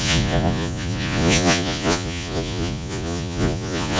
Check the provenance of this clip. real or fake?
fake